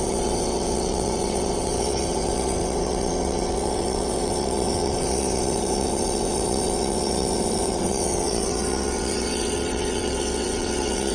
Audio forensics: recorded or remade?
remade